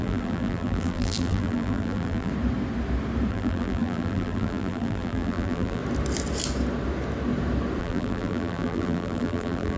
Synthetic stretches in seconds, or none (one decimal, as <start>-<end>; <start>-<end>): 0.0-2.3; 3.3-5.8; 7.8-9.8